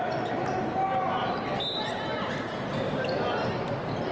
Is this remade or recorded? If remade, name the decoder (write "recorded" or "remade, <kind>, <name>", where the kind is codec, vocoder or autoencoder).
recorded